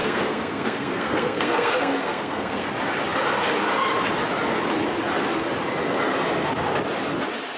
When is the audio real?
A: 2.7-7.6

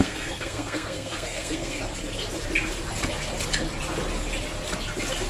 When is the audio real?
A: 1.8-5.3

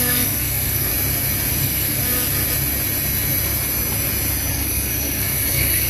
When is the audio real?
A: 0.9-1.5; 2.0-4.5

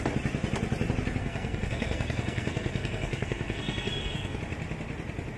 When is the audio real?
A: 0.0-1.2; 4.4-5.4

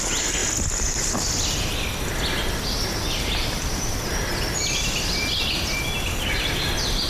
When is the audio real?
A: 0.0-7.1